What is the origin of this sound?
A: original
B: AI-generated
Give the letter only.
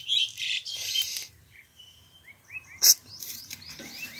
B